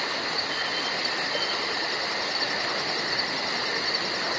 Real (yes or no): yes